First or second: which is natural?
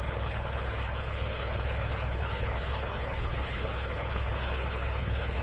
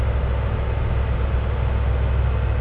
second